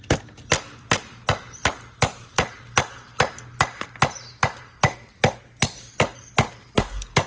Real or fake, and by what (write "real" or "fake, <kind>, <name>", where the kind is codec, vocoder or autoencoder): real